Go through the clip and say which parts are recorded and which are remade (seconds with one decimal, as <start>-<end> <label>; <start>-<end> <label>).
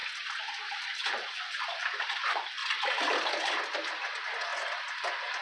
0.0-0.6 recorded; 0.6-2.6 remade; 2.6-3.6 recorded; 3.6-4.5 remade; 4.5-5.4 recorded